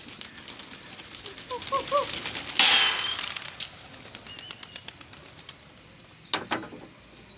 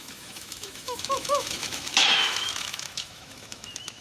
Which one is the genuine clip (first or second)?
first